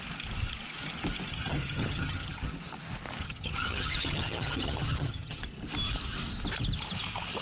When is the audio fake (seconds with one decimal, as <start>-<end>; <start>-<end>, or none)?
1.3-2.5; 3.2-5.4